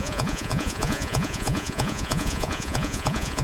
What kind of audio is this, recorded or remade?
remade